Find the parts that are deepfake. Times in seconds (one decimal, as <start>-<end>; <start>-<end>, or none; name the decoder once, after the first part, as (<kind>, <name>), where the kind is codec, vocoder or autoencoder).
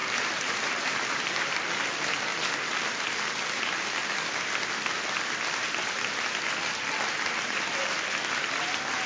0.0-1.5 (vocoder, BigVGAN v2)